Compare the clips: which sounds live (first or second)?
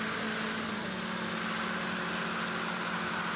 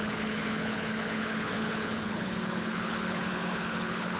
first